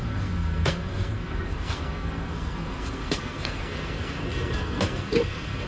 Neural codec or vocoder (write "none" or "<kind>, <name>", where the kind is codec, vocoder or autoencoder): codec, SNAC